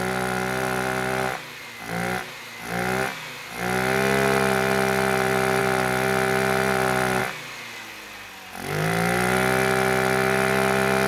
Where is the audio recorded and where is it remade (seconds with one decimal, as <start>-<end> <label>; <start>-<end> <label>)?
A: 0.0-11.1 recorded